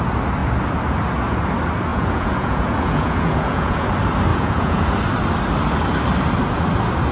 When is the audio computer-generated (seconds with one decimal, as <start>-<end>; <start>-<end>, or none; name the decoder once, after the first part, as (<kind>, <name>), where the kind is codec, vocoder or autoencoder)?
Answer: 1.9-3.9 (vocoder, Vocos); 4.3-4.8